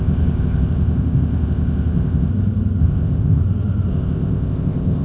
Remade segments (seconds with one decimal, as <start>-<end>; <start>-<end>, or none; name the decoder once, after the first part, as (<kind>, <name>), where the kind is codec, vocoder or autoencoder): 0.0-2.3 (codec, ZipCodec); 2.8-3.4; 3.9-5.0